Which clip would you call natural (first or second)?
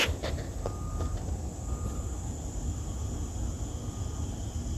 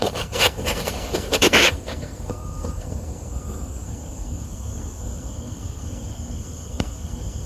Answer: first